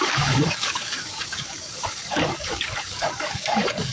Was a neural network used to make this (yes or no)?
yes